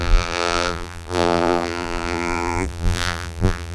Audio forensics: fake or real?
fake